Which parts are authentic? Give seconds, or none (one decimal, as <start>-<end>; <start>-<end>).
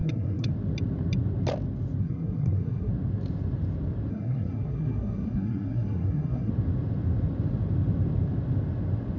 0.5-2.0; 2.9-4.1; 6.5-9.2